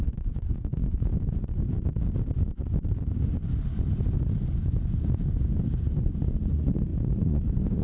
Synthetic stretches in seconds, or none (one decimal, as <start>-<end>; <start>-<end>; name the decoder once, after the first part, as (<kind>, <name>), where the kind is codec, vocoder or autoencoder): 0.0-1.1 (vocoder, Vocos); 5.8-7.8